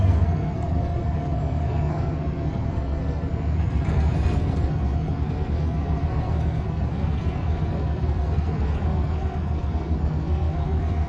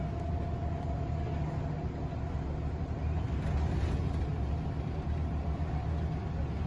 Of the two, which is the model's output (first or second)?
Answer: first